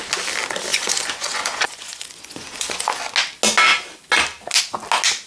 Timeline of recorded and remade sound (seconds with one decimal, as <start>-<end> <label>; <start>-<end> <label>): 0.0-0.7 recorded; 0.7-2.9 remade; 2.9-5.3 recorded